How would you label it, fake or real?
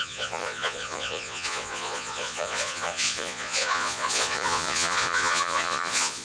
fake